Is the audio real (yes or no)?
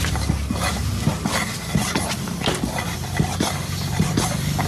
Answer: yes